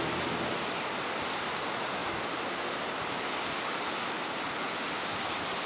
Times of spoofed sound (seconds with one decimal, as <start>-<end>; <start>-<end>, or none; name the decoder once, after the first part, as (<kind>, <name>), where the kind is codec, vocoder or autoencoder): none